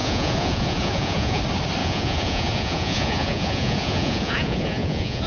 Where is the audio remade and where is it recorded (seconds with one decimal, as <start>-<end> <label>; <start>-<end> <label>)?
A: 0.0-1.4 remade; 1.4-1.8 recorded; 1.8-5.3 remade